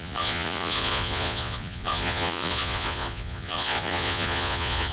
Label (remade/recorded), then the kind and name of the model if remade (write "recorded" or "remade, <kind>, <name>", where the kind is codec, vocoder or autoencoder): remade, vocoder, Vocos